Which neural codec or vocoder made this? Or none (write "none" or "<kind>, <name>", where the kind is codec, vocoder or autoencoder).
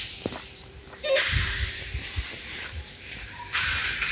vocoder, BigVGAN v2